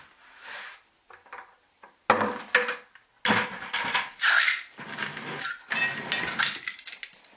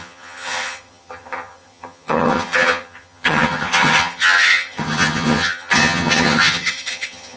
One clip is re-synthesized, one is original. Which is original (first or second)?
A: first